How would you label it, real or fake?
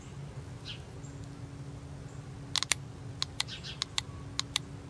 real